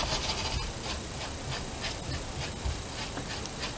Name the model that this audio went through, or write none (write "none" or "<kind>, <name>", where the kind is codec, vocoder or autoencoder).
none